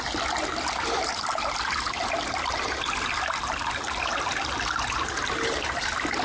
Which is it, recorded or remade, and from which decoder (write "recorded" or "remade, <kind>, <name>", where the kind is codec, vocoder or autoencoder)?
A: recorded